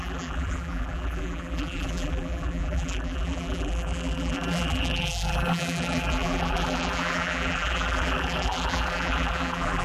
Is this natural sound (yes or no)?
no